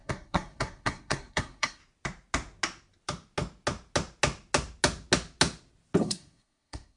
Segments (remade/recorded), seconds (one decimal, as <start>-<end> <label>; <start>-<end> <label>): 0.0-1.8 remade; 1.8-6.0 recorded; 6.0-7.0 remade

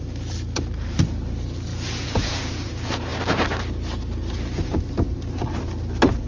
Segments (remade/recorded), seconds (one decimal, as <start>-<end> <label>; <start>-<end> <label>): 0.0-1.7 recorded; 1.7-2.7 remade; 2.7-6.3 recorded

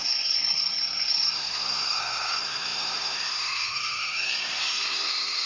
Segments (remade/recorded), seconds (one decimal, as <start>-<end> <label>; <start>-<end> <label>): 0.0-5.5 remade

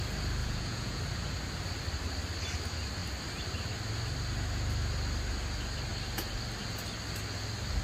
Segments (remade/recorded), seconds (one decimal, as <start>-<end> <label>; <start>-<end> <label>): 0.0-0.4 recorded; 0.4-1.0 remade; 1.0-7.8 recorded

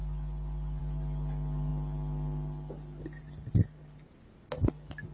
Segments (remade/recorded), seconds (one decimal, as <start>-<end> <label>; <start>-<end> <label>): 0.0-5.1 recorded

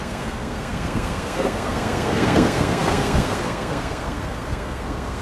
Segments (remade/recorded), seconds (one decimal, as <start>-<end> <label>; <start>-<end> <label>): 0.0-5.2 remade

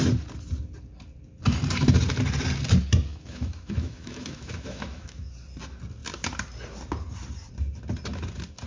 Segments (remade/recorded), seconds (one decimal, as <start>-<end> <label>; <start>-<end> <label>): 0.0-3.1 recorded; 3.1-5.3 remade; 5.3-8.7 recorded